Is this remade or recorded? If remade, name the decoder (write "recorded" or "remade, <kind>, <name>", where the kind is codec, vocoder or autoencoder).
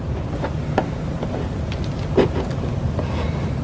recorded